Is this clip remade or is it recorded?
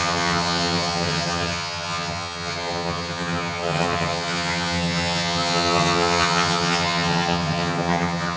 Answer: remade